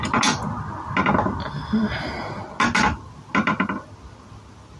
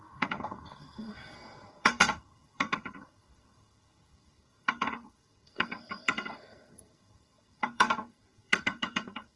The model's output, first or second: second